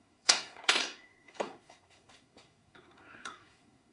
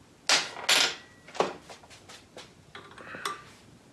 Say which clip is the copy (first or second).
first